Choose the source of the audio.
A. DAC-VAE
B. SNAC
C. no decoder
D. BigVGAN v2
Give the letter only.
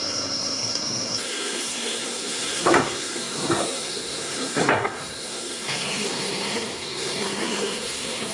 B